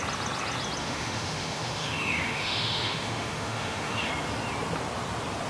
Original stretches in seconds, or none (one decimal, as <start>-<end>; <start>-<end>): 0.0-0.8; 4.1-5.5